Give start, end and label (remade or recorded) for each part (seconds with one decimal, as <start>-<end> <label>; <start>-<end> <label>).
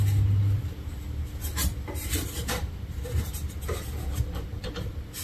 0.0-5.2 recorded